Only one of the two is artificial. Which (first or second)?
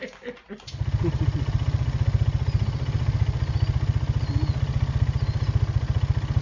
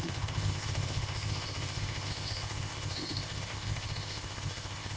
second